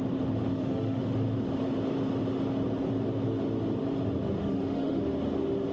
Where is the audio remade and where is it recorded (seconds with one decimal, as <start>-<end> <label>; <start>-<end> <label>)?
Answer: 0.0-0.5 recorded; 0.5-1.0 remade; 1.0-4.4 recorded; 4.4-5.0 remade; 5.0-5.7 recorded